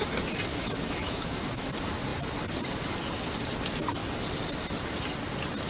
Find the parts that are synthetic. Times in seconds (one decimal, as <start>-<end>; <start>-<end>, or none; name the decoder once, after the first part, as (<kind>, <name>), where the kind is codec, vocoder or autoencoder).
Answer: 0.5-1.7 (autoencoder, DAC-VAE)